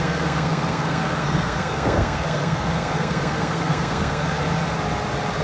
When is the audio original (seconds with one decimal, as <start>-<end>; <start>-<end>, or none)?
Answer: 4.4-5.4